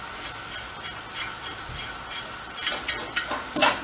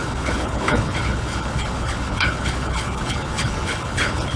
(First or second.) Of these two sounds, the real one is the first